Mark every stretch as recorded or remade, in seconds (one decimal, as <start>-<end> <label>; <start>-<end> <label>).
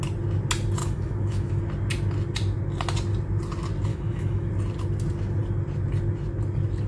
0.0-0.8 recorded; 0.8-1.6 remade; 1.6-3.9 recorded; 3.9-4.5 remade; 4.5-6.9 recorded